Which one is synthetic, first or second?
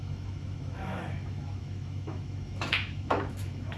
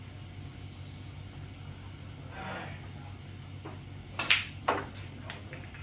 first